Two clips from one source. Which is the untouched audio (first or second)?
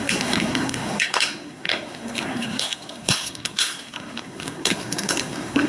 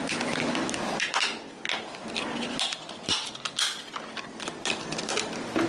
second